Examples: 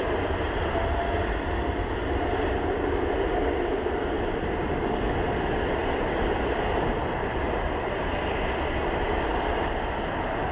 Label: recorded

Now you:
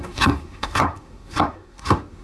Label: remade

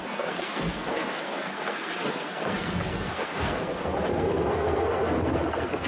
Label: remade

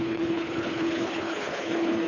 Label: remade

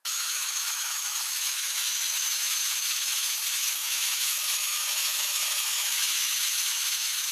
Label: remade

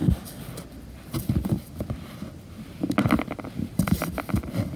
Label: recorded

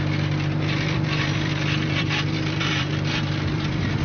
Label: remade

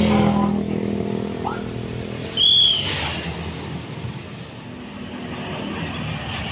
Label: recorded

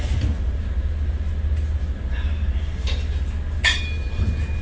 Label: recorded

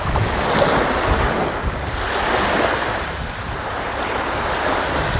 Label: recorded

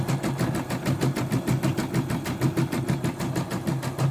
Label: recorded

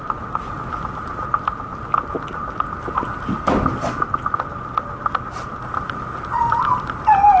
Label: recorded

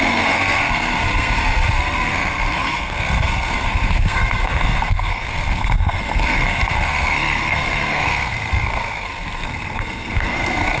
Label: remade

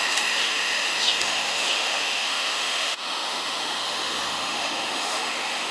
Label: remade